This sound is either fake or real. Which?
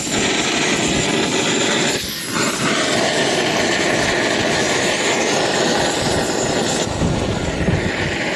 real